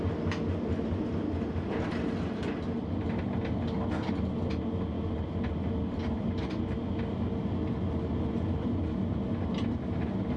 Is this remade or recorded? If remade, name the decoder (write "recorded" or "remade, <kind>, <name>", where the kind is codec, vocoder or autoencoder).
recorded